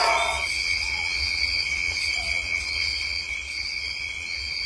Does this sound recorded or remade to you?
remade